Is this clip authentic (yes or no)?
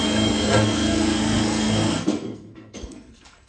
no